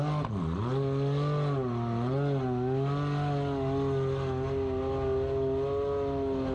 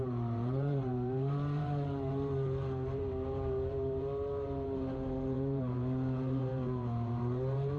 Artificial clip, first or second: second